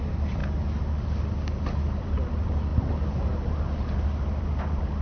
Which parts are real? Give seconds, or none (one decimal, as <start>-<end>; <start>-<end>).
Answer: 0.4-2.0; 2.7-4.4